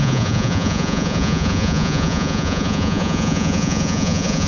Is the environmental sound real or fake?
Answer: fake